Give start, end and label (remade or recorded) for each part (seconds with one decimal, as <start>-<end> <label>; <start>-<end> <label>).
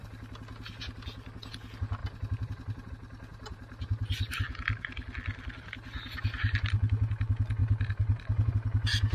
0.0-2.0 recorded; 2.0-2.9 remade; 2.9-3.3 recorded; 3.3-5.7 remade; 5.7-7.6 recorded; 7.6-8.5 remade; 8.5-9.1 recorded